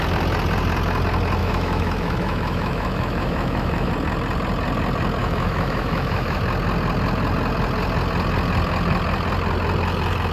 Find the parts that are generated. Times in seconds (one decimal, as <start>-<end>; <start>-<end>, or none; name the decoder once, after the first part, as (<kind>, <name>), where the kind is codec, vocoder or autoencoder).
1.4-3.9 (autoencoder, DAC-VAE); 5.2-6.4